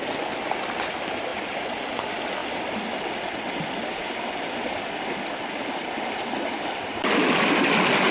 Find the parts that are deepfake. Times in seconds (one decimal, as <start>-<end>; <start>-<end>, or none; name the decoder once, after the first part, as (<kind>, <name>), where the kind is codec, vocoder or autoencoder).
none